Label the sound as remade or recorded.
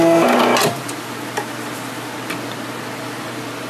recorded